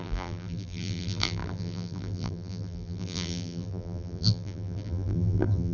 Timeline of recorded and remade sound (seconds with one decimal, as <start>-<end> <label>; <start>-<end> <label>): 0.0-5.7 remade